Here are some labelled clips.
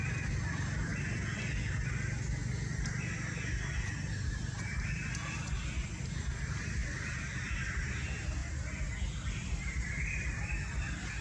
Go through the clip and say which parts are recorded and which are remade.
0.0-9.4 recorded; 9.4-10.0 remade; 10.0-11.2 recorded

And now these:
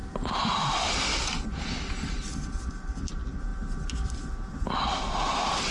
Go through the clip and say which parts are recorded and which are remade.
0.0-2.7 recorded; 2.7-3.5 remade; 3.5-4.6 recorded; 4.6-5.7 remade

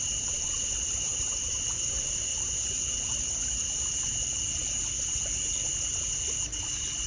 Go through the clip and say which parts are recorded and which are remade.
0.0-2.3 remade; 2.3-6.6 recorded; 6.6-7.1 remade

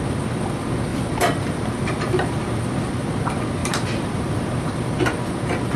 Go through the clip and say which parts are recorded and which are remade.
0.0-0.9 recorded; 0.9-2.3 remade; 2.3-3.6 recorded; 3.6-4.9 remade; 4.9-5.8 recorded

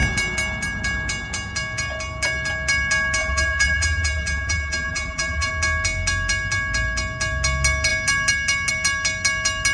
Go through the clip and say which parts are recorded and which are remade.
0.0-3.2 recorded; 3.2-5.5 remade; 5.5-9.7 recorded

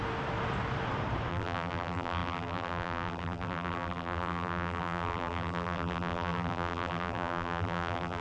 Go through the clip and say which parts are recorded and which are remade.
0.0-1.3 recorded; 1.3-8.2 remade

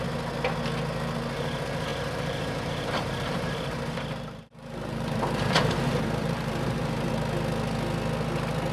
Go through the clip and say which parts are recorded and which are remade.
0.0-1.9 recorded; 1.9-7.1 remade; 7.1-8.7 recorded

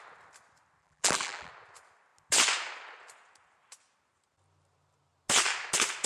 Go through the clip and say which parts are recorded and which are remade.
0.0-0.8 recorded; 0.8-1.5 remade; 1.5-6.1 recorded